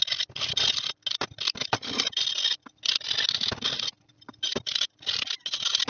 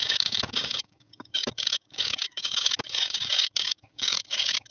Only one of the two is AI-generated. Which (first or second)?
second